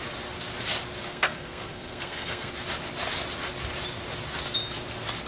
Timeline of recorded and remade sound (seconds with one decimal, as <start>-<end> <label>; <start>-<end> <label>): 0.0-1.1 recorded; 1.1-2.5 remade; 2.5-5.3 recorded